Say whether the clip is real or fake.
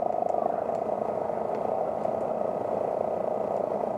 real